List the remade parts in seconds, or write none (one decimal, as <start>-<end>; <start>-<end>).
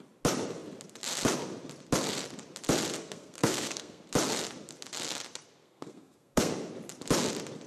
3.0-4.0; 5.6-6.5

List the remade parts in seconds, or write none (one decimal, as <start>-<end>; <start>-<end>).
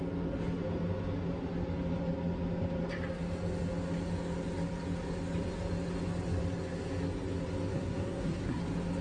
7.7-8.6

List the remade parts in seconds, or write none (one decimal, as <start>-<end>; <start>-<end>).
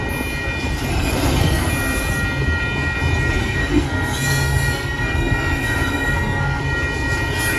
0.9-1.7; 3.4-6.6